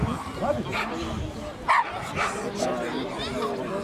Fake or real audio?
real